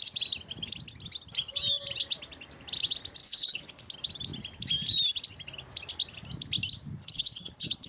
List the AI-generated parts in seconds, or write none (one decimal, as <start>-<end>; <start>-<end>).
3.2-3.9; 7.0-7.9